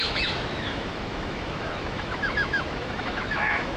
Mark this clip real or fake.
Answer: fake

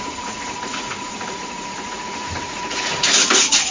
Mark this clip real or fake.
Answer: fake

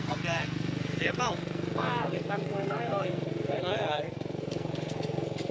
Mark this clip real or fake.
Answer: fake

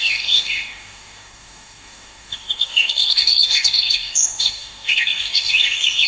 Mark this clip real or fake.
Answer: fake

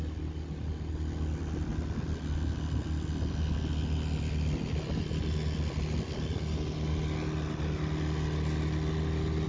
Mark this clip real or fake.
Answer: real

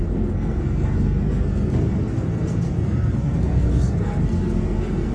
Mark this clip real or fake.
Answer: fake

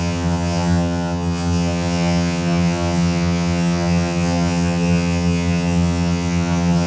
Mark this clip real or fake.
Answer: fake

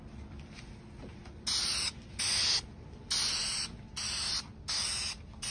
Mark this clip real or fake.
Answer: real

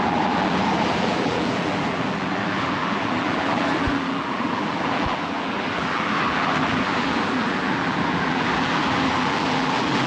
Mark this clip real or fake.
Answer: fake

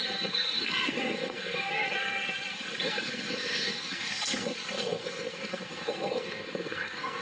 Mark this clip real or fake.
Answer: fake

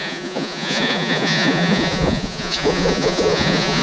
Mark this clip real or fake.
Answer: fake